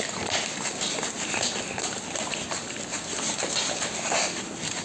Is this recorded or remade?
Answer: recorded